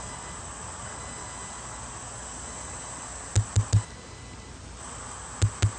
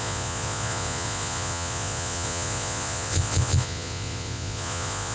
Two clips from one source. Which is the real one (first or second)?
first